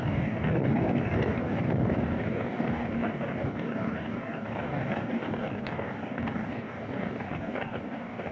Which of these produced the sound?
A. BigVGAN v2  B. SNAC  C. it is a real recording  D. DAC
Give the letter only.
D